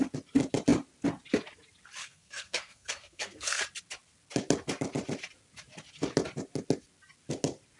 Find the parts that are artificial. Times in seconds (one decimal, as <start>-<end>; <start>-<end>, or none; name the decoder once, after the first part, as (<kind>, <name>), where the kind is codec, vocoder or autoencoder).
2.0-3.6 (codec, SNAC)